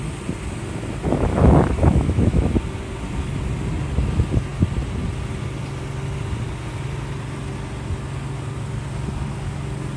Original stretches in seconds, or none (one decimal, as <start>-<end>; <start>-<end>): 0.0-1.3; 2.5-10.0